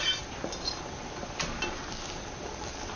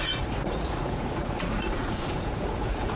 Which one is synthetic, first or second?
second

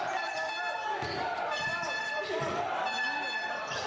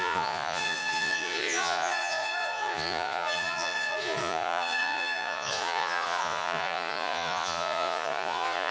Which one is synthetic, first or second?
second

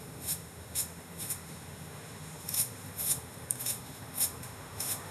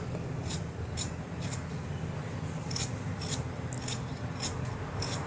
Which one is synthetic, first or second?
first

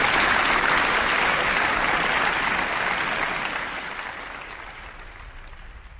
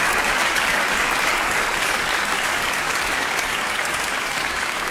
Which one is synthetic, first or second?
second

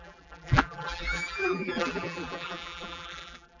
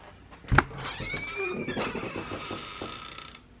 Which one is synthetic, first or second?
first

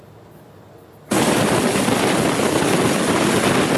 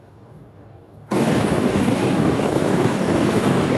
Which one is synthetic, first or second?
second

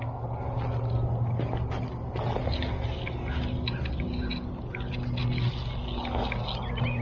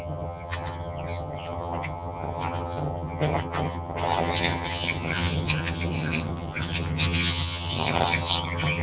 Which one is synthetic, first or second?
second